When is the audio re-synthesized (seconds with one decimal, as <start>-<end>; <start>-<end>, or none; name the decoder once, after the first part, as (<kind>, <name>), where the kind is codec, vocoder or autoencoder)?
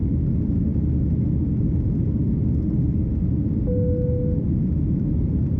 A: none